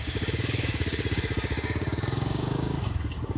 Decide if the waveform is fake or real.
fake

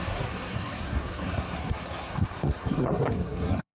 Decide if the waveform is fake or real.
fake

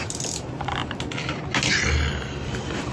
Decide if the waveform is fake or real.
real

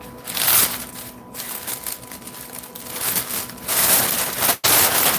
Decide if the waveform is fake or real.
real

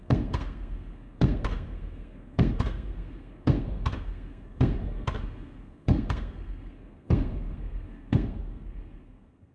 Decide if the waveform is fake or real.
fake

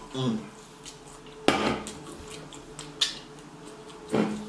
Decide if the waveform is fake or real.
real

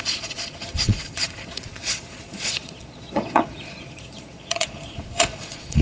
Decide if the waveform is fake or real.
fake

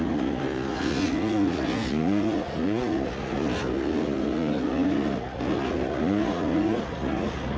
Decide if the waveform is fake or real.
fake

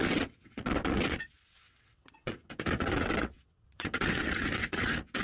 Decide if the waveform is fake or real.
fake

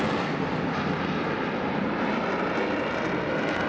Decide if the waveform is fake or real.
real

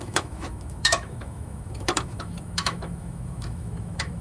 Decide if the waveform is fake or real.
fake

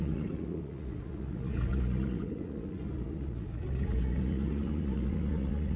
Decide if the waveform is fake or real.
fake